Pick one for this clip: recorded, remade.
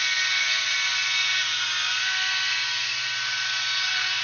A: recorded